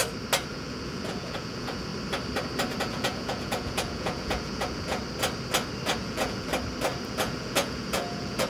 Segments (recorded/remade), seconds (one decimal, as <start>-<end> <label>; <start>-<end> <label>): 0.0-0.5 recorded; 0.5-1.9 remade; 1.9-2.8 recorded; 2.8-5.0 remade; 5.0-6.0 recorded; 6.0-6.5 remade; 6.5-7.0 recorded; 7.0-8.5 remade